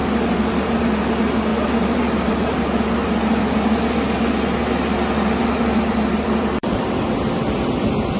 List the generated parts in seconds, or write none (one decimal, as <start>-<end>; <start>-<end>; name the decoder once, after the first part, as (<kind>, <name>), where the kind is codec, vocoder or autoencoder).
0.0-0.8 (vocoder, BigVGAN v2); 5.4-6.8